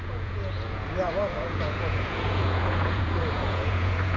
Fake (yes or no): yes